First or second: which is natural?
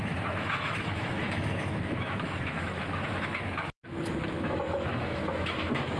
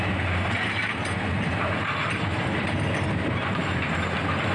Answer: second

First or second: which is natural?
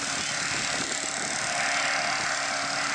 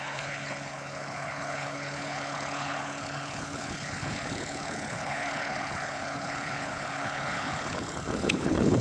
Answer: first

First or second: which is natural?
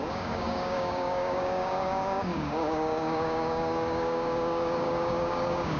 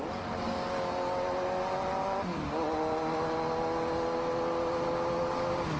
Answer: second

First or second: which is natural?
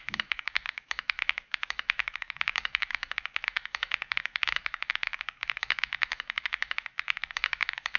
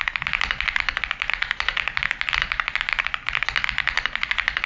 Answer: second